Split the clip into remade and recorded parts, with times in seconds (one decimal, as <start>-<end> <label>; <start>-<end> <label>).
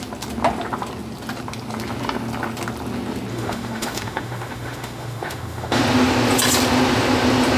0.0-3.3 recorded; 3.3-5.8 remade; 5.8-7.6 recorded